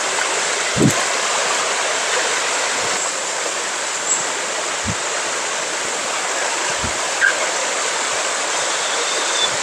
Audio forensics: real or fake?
real